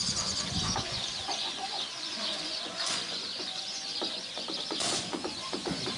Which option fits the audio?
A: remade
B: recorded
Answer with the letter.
A